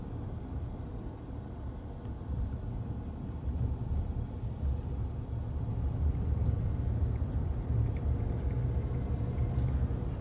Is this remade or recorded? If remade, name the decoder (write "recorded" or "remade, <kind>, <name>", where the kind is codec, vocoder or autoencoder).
recorded